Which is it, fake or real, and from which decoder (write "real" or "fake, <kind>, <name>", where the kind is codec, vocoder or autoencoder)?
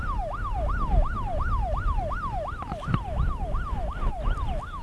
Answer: real